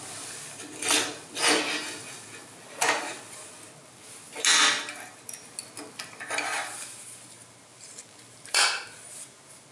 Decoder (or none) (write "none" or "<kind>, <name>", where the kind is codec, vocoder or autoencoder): none